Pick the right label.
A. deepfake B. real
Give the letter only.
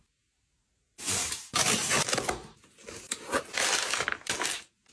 B